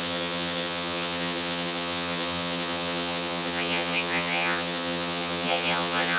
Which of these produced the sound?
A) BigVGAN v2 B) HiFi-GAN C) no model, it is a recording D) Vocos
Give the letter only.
B